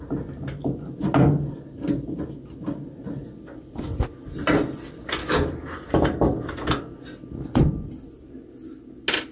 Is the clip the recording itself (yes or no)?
yes